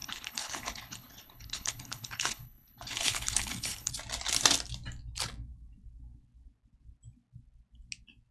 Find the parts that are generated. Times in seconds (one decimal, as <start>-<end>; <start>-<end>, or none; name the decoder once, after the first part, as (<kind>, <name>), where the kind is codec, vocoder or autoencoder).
0.0-3.9 (codec, HILCodec)

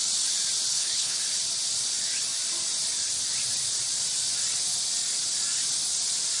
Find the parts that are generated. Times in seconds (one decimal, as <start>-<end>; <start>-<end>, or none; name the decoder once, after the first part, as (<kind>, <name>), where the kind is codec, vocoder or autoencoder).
0.7-1.2 (codec, HILCodec)

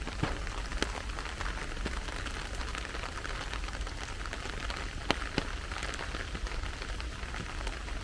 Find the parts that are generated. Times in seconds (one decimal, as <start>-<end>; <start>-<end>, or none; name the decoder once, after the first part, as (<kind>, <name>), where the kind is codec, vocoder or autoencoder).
none

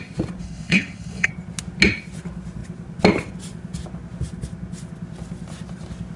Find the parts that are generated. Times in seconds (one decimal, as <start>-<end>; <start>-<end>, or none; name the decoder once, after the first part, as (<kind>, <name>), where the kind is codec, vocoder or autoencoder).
0.4-1.3 (codec, HILCodec)

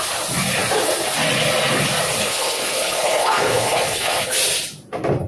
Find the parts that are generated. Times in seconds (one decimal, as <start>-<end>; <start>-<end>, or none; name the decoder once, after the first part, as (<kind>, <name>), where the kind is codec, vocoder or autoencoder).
2.2-4.2 (codec, HILCodec)

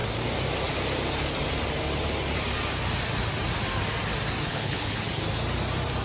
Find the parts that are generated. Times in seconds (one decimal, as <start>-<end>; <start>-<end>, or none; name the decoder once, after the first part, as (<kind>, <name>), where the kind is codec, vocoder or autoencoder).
4.5-5.1 (codec, HILCodec)